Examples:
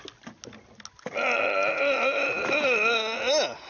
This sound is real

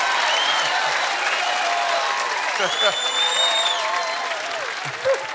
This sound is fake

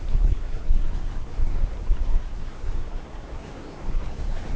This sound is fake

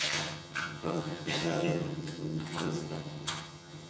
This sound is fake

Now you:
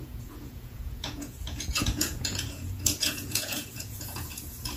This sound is fake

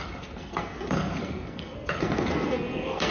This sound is fake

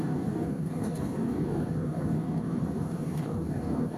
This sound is fake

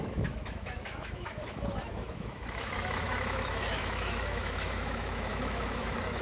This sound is fake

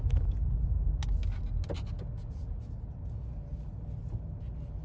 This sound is real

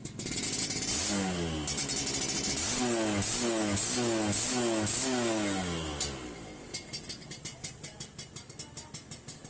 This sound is real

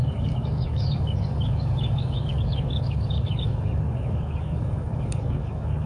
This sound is fake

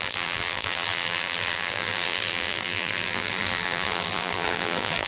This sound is fake